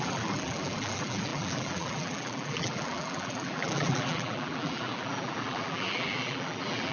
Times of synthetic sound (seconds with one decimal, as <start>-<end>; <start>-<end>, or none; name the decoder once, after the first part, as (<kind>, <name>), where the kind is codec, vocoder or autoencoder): 0.0-6.9 (vocoder, BigVGAN v2)